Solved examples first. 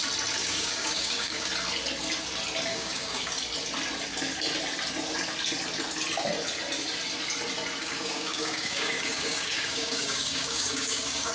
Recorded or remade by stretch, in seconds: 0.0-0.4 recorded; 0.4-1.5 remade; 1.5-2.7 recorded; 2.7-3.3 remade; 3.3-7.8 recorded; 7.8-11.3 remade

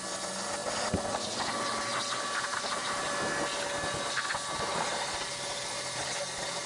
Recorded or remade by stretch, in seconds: 0.0-6.7 recorded

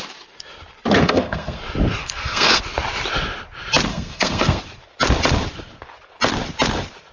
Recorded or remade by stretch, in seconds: 0.0-1.0 recorded; 1.0-1.6 remade; 1.6-2.0 recorded; 2.0-2.6 remade; 2.6-3.9 recorded; 3.9-4.6 remade; 4.6-7.1 recorded